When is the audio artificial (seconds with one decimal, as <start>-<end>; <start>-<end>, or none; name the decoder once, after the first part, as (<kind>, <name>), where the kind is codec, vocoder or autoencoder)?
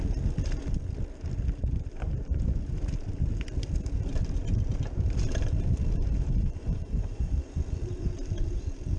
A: 6.4-7.5 (vocoder, Vocos)